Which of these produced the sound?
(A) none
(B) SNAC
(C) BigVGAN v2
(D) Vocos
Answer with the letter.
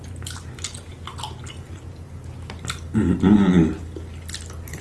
A